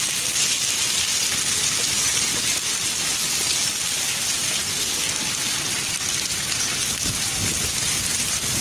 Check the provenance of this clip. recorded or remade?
recorded